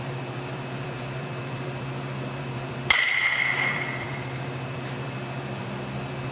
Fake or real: fake